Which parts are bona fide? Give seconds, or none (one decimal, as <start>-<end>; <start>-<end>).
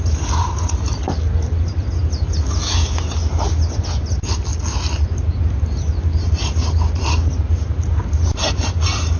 0.0-9.2